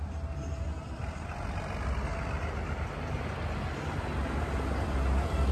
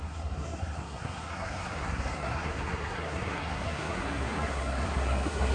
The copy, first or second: second